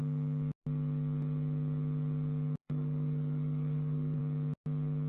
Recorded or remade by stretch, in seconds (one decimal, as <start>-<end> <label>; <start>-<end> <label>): 0.0-2.6 recorded; 2.6-4.2 remade; 4.2-5.1 recorded